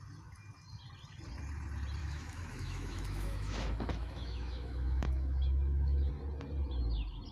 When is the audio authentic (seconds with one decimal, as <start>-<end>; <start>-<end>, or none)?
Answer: 0.0-2.0; 6.1-7.3